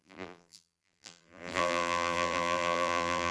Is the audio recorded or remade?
remade